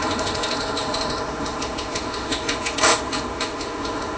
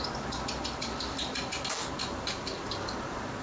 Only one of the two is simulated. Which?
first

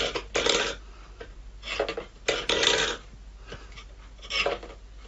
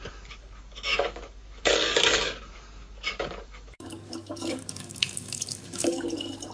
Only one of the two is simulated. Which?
second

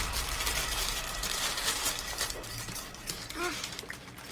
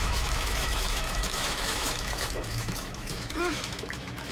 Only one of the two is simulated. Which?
second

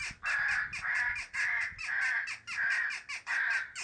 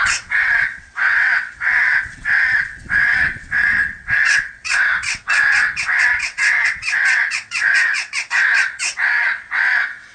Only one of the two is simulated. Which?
second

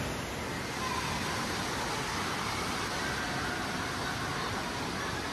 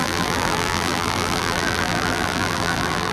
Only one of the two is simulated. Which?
second